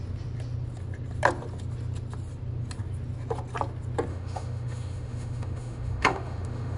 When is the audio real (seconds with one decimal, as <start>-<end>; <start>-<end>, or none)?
0.0-4.1